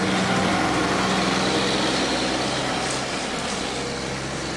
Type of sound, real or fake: real